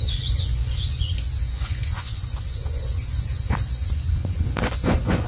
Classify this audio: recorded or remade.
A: remade